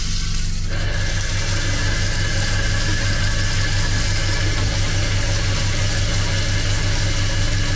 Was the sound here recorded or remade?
recorded